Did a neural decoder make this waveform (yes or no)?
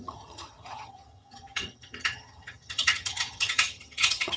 yes